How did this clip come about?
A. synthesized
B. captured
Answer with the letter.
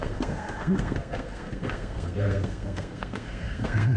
A